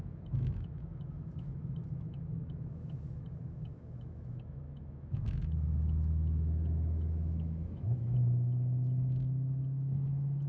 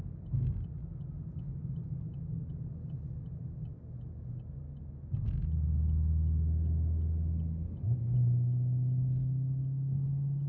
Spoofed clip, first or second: first